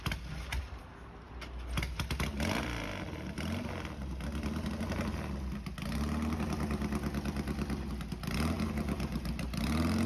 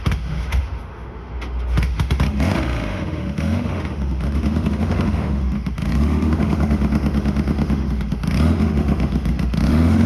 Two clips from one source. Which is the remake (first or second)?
second